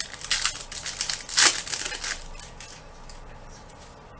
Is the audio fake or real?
real